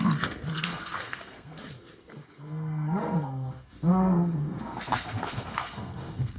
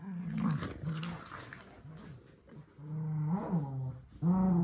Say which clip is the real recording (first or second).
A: second